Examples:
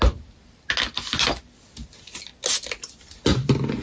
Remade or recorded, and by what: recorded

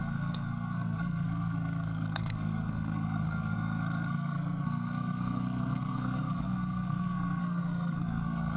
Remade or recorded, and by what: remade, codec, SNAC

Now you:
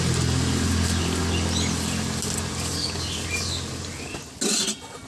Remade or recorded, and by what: recorded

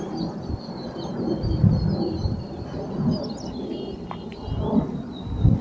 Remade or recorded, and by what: recorded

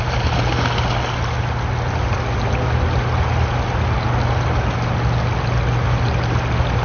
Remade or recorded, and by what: recorded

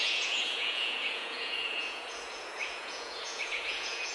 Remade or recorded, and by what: remade, vocoder, Vocos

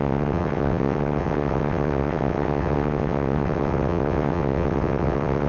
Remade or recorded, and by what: remade, vocoder, WaveNeXt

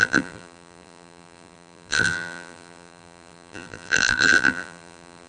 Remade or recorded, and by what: remade, vocoder, BigVGAN v2